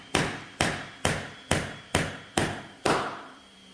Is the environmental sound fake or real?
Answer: fake